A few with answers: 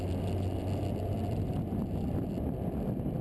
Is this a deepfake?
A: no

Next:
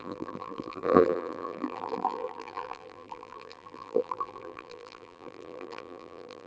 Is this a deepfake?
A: yes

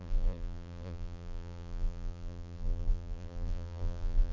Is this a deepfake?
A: yes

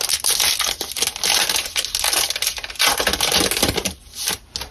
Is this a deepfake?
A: no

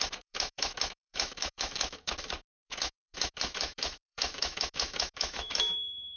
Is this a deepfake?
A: yes